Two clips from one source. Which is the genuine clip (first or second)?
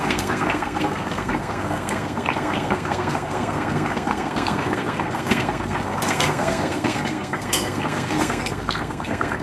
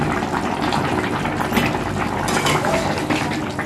second